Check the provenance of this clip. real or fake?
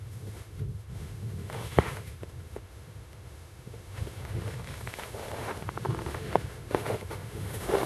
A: fake